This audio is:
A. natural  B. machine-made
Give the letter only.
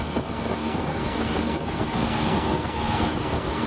B